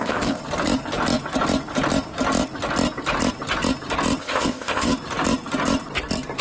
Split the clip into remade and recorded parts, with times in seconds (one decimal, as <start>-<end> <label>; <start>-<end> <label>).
0.0-0.4 remade; 0.4-4.2 recorded; 4.2-4.9 remade; 4.9-6.4 recorded